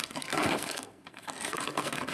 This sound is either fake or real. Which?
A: fake